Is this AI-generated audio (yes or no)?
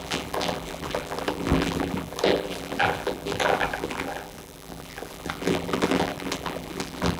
yes